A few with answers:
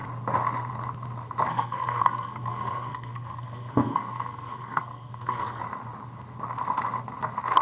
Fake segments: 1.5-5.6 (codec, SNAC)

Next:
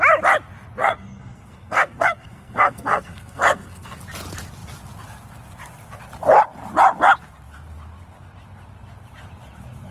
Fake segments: 0.8-4.0 (codec, SNAC)

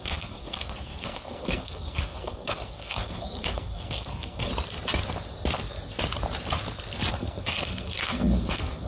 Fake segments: 0.0-4.5 (codec, SNAC); 7.1-8.9

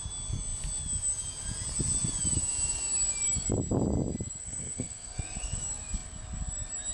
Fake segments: 4.4-5.6 (codec, SNAC)

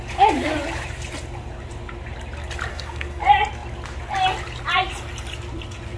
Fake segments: 2.7-3.2 (codec, SNAC)

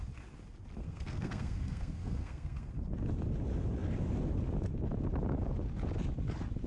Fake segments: 0.8-2.7 (codec, SNAC)

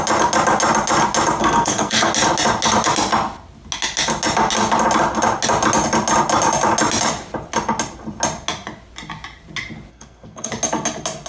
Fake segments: 1.4-2.1 (codec, SNAC); 9.9-10.5